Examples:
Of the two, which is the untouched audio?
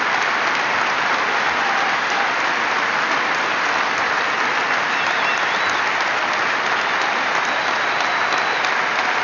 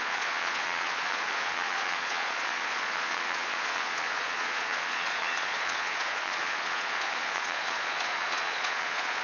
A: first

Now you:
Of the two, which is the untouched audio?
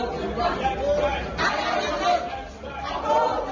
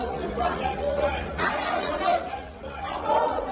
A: first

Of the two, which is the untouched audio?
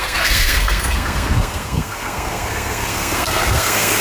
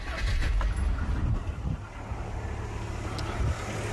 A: second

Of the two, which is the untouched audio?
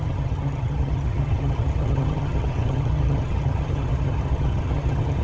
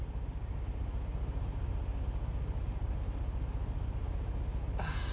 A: second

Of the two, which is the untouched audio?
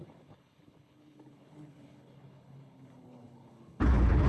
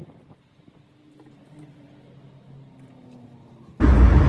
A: second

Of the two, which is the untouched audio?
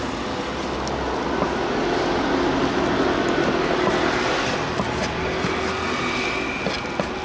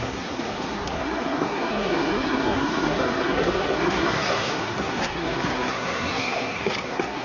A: first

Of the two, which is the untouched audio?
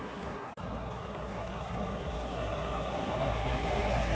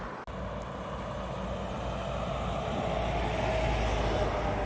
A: second